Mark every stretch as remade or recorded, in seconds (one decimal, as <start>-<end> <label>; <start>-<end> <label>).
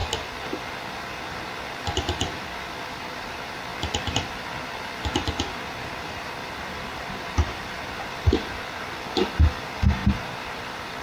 0.0-0.8 remade; 0.8-3.7 recorded; 3.7-8.3 remade; 8.3-10.0 recorded; 10.0-10.6 remade; 10.6-11.0 recorded